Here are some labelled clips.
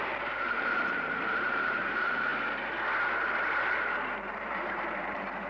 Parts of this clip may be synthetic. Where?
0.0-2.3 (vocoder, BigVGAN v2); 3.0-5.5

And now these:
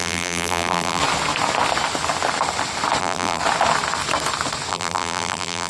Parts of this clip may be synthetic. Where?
0.0-1.0 (vocoder, BigVGAN v2); 3.0-3.4; 4.7-5.7

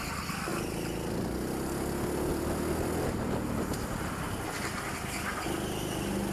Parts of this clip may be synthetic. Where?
none

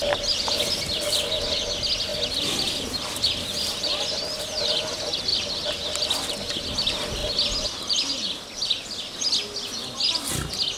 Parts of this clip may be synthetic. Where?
none

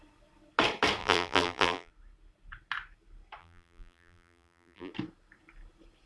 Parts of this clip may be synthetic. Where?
1.0-1.9 (vocoder, BigVGAN v2); 3.4-4.9